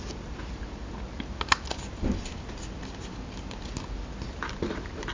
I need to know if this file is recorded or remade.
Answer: recorded